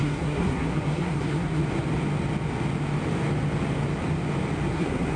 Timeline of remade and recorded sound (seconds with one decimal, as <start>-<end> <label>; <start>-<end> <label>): 0.0-1.6 remade; 1.6-4.7 recorded; 4.7-5.2 remade